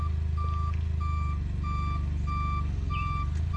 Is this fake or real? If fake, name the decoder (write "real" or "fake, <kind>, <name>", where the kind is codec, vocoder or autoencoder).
real